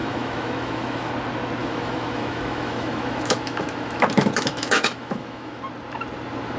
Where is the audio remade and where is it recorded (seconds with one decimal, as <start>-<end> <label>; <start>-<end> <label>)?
0.0-1.1 remade; 1.1-1.6 recorded; 1.6-5.6 remade; 5.6-6.6 recorded